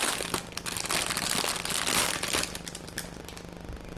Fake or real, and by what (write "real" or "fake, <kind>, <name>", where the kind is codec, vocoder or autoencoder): real